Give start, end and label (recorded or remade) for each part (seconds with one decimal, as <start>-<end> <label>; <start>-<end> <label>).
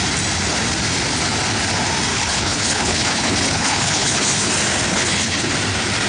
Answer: 0.0-2.1 recorded; 2.1-4.5 remade; 4.5-4.9 recorded; 4.9-5.5 remade; 5.5-6.1 recorded